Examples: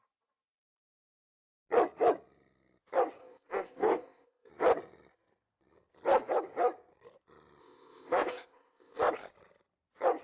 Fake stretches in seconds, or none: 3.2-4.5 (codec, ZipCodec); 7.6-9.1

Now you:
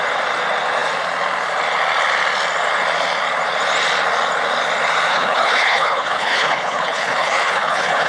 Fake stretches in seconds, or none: 5.1-8.1 (codec, HILCodec)